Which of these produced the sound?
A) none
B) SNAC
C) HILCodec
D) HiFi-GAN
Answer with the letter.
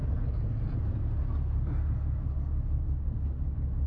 A